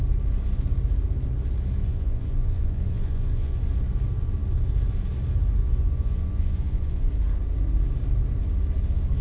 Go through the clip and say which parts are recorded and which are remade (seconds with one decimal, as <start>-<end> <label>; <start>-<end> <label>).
0.0-1.8 recorded; 1.8-3.6 remade; 3.6-5.6 recorded; 5.6-7.1 remade; 7.1-9.2 recorded